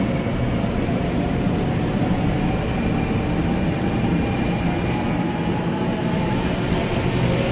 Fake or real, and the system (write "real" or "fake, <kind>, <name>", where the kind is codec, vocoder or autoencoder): real